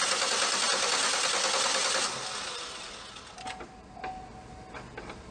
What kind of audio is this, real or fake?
real